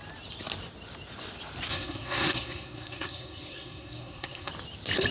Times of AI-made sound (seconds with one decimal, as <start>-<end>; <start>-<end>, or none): 1.7-4.5

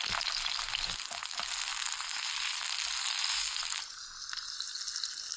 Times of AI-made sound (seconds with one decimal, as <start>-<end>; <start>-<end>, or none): none

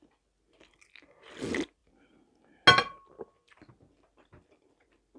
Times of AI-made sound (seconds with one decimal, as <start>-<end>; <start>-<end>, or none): none